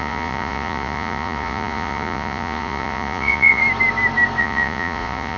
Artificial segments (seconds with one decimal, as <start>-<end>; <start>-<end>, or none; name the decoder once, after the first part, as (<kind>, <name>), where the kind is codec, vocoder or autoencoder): 0.0-3.6 (vocoder, Vocos); 4.4-5.4